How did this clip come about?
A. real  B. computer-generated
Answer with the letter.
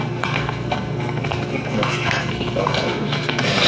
B